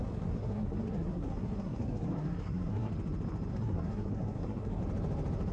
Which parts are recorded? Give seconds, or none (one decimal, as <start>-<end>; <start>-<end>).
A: 2.9-3.5; 4.8-5.5